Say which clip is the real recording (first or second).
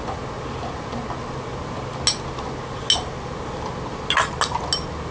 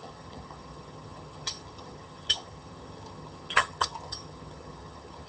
first